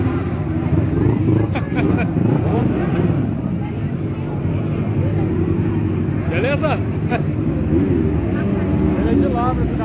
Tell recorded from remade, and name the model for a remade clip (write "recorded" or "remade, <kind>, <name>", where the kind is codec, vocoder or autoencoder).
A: recorded